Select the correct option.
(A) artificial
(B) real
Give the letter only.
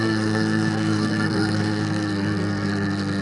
A